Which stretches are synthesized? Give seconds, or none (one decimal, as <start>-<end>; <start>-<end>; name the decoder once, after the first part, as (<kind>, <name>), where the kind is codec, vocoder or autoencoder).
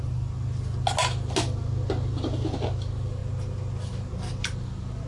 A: none